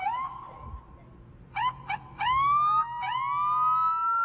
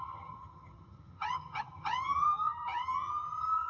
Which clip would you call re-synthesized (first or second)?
second